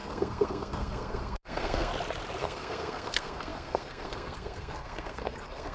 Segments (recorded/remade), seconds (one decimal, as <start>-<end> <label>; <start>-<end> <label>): 0.0-1.9 remade; 1.9-2.4 recorded; 2.4-5.7 remade